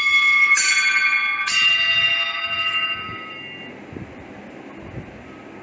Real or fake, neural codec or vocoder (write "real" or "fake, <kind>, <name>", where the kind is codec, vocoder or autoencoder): real